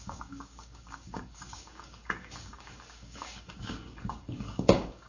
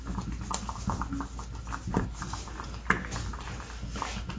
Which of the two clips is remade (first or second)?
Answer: first